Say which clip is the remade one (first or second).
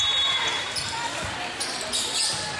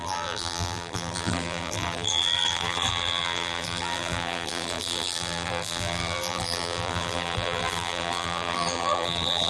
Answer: second